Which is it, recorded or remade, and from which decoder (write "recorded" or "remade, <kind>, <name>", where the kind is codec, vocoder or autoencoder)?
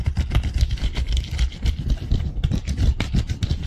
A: recorded